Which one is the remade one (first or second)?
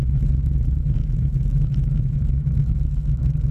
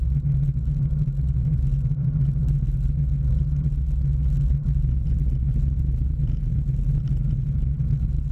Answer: first